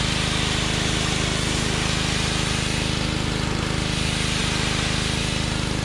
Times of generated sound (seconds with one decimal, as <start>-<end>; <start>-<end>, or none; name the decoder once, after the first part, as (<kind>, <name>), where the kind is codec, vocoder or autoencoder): none